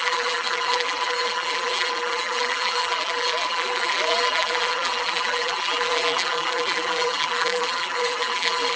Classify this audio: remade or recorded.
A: remade